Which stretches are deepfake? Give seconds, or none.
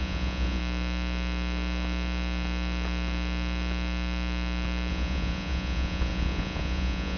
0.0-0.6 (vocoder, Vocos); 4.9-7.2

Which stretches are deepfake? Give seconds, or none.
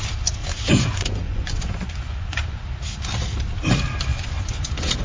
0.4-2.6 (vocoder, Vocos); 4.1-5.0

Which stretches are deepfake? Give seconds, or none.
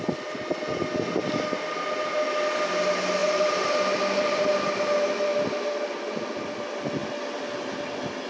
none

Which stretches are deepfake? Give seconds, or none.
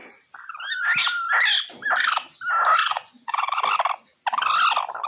2.8-3.6 (vocoder, Vocos)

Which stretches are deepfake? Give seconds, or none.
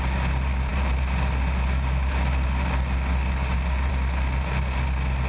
none